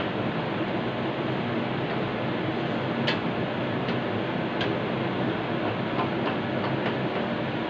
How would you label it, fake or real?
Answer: real